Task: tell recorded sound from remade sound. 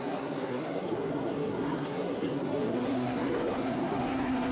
remade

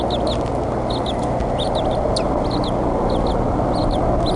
recorded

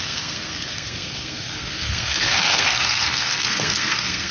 remade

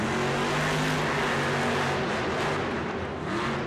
recorded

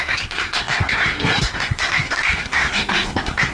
remade